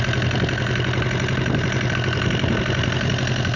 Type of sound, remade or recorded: recorded